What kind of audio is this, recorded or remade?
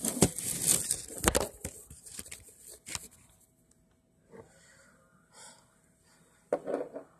recorded